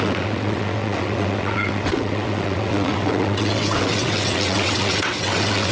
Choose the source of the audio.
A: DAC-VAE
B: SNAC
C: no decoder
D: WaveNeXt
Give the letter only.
D